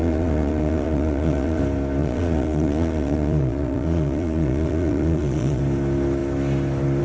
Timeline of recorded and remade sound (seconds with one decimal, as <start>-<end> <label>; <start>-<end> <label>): 0.0-1.6 remade; 1.6-2.0 recorded; 2.0-5.6 remade; 5.6-7.0 recorded